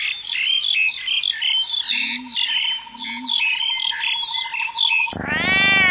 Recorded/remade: recorded